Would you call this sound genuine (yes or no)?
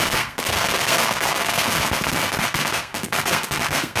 no